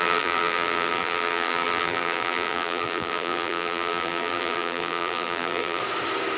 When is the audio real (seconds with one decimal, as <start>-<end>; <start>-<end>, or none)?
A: 5.8-6.4